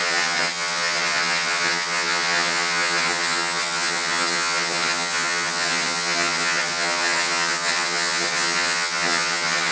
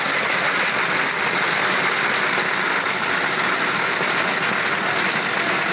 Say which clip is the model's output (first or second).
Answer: first